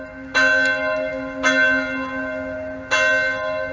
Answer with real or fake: real